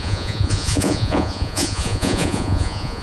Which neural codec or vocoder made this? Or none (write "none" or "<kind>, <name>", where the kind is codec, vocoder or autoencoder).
vocoder, Vocos